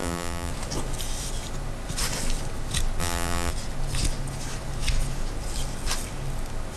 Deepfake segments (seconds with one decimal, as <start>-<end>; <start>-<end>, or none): 0.0-0.5; 3.0-3.5